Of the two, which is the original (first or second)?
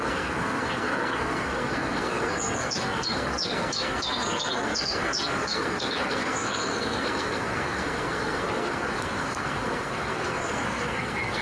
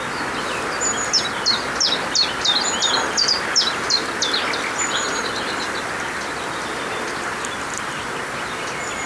second